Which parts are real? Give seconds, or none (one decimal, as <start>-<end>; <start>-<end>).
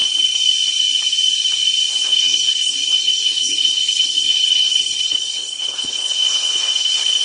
0.0-1.9